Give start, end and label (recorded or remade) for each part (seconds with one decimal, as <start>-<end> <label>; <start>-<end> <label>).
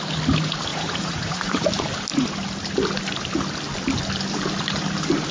0.0-0.7 recorded; 0.7-1.7 remade; 1.7-5.3 recorded